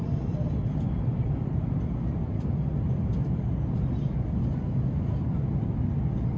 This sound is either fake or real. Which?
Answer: fake